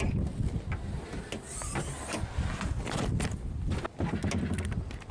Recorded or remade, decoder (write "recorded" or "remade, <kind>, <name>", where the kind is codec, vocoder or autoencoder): recorded